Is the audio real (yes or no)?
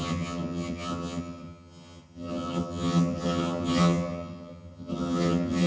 no